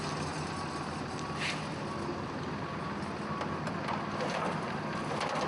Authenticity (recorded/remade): recorded